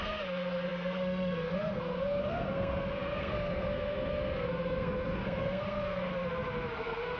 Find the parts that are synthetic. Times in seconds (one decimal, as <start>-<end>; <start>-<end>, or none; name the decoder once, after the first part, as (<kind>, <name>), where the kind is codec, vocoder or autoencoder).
0.0-6.1 (codec, SNAC); 6.8-7.2